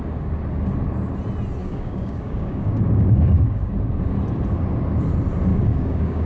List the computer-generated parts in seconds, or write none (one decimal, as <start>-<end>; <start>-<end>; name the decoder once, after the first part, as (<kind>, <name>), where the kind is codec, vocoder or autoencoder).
1.6-3.7 (codec, DAC); 5.5-6.3